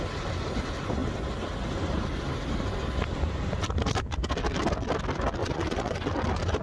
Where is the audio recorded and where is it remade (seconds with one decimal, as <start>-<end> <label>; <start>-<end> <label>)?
0.0-5.4 recorded; 5.4-6.1 remade; 6.1-6.6 recorded